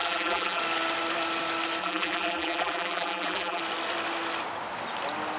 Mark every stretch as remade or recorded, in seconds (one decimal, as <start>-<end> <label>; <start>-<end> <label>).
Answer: 0.0-0.6 remade; 0.6-1.8 recorded; 1.8-3.6 remade; 3.6-5.4 recorded